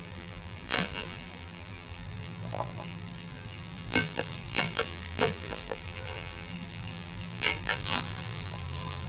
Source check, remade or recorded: remade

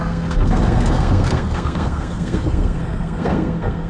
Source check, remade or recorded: remade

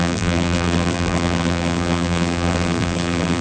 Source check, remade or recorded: remade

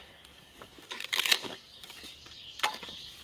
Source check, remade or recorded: remade